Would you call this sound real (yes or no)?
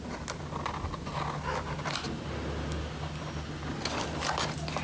yes